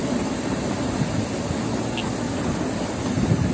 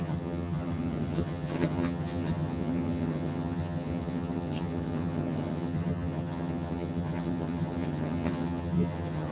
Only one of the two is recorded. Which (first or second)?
first